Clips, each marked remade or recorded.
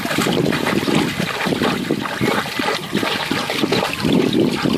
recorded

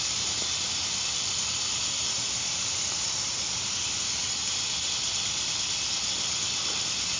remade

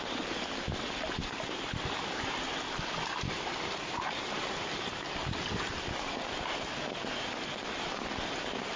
recorded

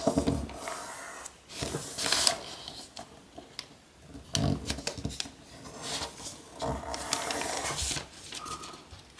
recorded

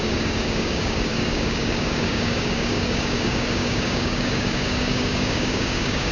remade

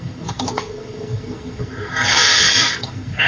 remade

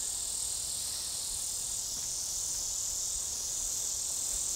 recorded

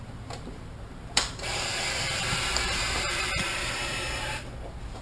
remade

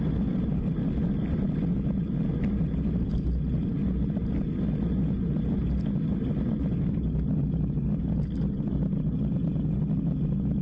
recorded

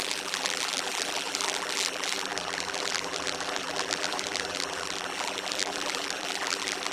remade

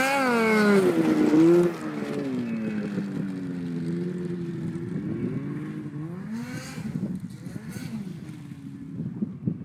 recorded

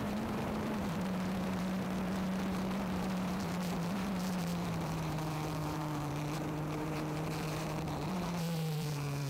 remade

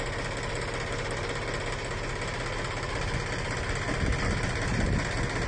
recorded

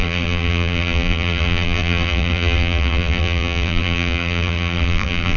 remade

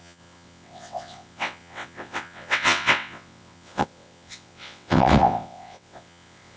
remade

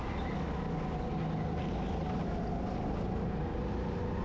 recorded